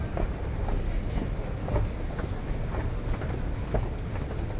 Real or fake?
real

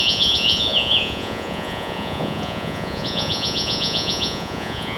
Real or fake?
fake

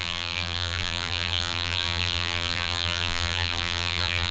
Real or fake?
fake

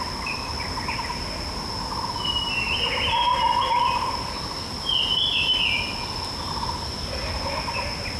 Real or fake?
real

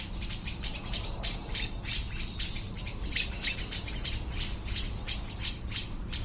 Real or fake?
fake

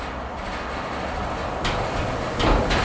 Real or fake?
real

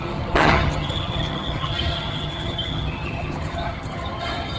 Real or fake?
fake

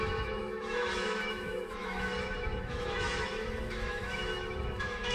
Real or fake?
fake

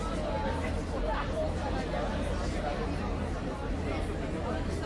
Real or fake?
real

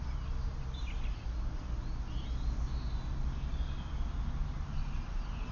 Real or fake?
real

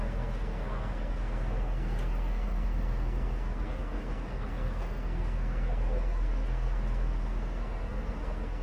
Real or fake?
fake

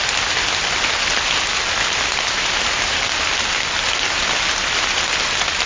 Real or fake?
real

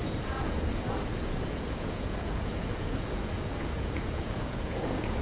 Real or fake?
fake